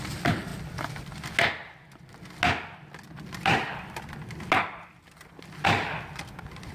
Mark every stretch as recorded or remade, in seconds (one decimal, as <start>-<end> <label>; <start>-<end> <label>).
0.0-6.7 recorded